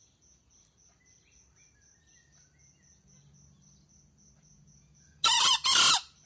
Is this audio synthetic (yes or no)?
no